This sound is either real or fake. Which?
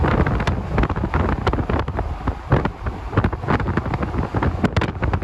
real